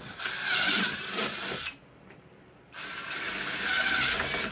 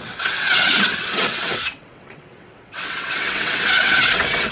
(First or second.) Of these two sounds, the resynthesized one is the second